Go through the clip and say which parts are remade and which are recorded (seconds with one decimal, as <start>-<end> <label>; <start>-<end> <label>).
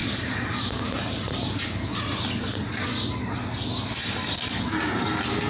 0.0-2.2 remade; 2.2-4.0 recorded; 4.0-4.6 remade; 4.6-5.5 recorded